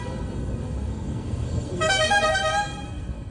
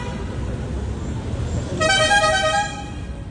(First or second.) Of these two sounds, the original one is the second